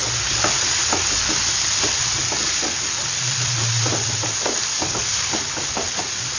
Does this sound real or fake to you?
real